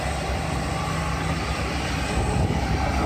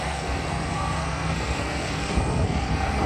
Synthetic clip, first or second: second